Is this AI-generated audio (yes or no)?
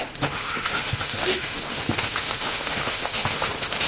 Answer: yes